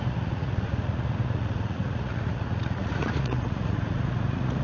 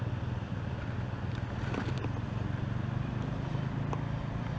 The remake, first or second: first